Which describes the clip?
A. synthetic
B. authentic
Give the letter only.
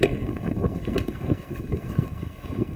A